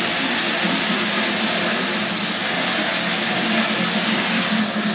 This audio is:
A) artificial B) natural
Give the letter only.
B